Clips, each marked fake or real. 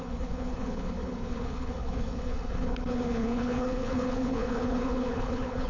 fake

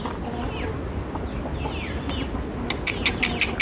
real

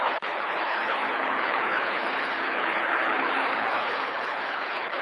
fake